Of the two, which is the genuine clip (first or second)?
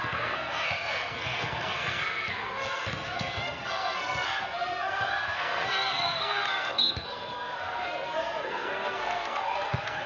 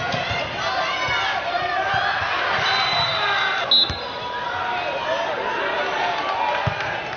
second